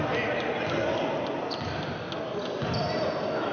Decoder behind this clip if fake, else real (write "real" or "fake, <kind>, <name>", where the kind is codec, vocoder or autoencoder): real